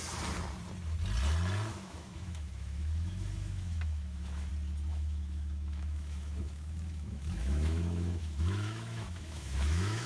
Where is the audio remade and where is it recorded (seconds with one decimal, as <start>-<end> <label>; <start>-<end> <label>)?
0.0-1.7 recorded; 1.7-4.5 remade; 4.5-4.9 recorded; 4.9-10.1 remade